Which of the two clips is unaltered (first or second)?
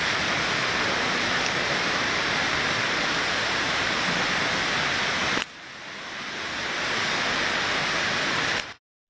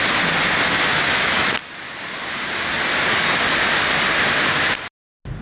second